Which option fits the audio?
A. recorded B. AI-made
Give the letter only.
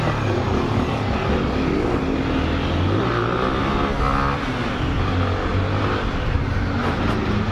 A